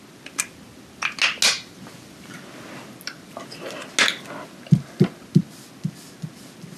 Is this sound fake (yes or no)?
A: no